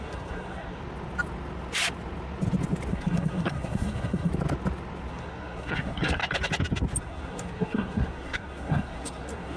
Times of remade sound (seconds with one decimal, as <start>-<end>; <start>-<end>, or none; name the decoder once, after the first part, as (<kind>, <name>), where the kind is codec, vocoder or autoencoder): 0.0-0.8 (codec, SNAC); 2.9-4.3; 5.1-6.2; 7.0-9.6